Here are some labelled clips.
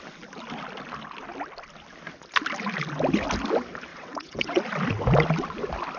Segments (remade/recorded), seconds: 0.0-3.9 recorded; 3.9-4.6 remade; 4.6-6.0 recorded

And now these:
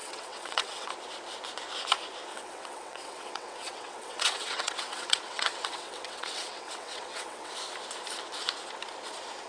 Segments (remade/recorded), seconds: 0.0-0.9 remade; 0.9-2.3 recorded; 2.3-7.5 remade; 7.5-9.5 recorded

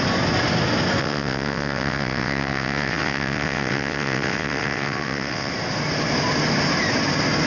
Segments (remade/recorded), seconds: 0.0-1.0 recorded; 1.0-5.5 remade; 5.5-7.5 recorded